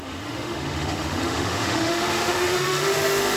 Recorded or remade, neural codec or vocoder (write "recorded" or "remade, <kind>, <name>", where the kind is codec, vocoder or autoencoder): remade, autoencoder, DAC-VAE